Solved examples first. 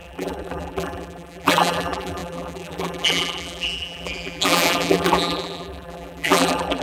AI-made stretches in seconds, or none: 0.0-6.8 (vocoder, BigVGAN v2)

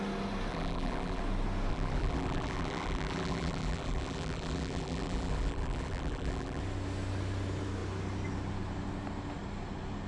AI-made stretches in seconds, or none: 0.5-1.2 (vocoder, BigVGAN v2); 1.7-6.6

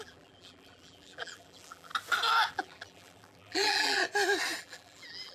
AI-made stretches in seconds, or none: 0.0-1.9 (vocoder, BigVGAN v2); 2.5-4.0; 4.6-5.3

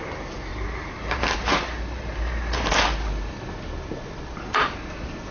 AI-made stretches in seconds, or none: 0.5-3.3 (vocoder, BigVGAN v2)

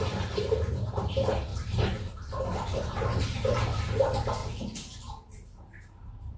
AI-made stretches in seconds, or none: 0.0-6.4 (vocoder, BigVGAN v2)